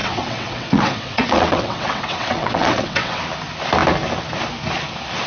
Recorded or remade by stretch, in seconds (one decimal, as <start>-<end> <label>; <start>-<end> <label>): 0.0-3.2 remade; 3.2-5.3 recorded